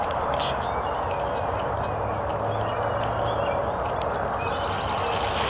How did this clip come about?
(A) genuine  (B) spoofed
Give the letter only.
A